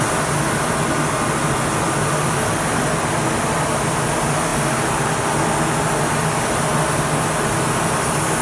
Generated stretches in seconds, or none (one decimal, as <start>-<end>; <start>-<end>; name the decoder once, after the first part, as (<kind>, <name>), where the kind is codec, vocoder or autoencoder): none